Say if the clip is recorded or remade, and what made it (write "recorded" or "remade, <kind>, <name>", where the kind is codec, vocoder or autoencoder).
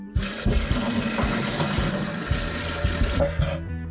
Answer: recorded